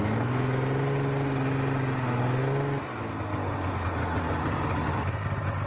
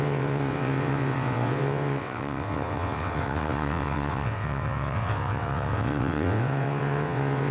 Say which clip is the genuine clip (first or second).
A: first